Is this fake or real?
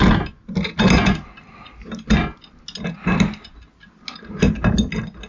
real